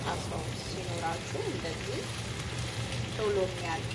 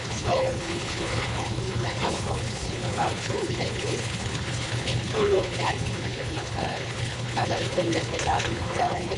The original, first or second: first